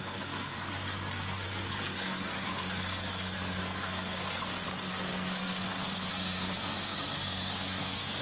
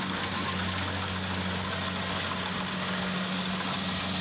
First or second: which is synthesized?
first